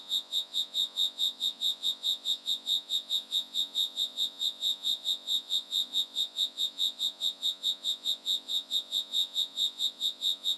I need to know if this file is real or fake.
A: fake